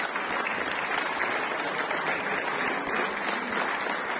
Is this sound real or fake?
real